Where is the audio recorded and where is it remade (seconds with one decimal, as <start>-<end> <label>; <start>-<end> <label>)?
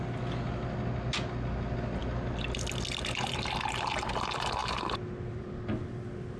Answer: 0.0-4.6 recorded; 4.6-5.4 remade; 5.4-6.4 recorded